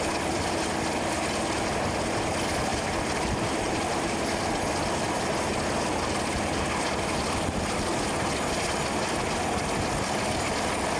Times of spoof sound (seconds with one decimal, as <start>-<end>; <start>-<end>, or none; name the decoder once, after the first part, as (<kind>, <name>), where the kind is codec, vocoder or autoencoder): 2.7-4.4 (vocoder, BigVGAN v2)

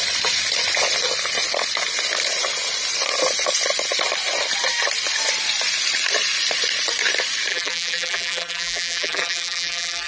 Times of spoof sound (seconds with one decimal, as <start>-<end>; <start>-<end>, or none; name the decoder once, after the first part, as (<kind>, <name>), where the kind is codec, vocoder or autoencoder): 7.5-10.1 (vocoder, BigVGAN v2)

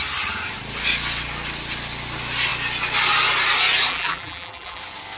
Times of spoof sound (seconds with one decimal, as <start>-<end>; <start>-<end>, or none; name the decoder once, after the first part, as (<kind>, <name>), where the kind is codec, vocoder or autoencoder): 3.9-4.8 (vocoder, BigVGAN v2)

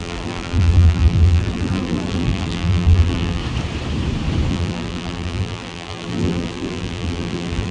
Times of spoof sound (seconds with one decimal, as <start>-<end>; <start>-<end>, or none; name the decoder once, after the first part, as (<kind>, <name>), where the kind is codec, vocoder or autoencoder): 0.0-3.4 (vocoder, BigVGAN v2); 4.5-7.7

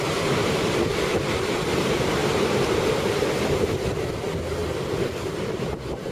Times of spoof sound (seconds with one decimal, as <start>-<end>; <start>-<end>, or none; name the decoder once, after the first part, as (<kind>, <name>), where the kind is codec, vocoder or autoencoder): 2.2-2.9 (vocoder, BigVGAN v2)